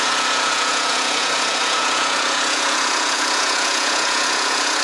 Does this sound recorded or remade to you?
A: remade